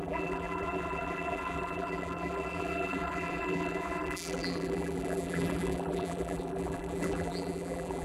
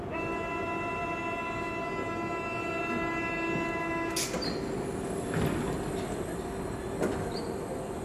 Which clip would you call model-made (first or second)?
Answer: first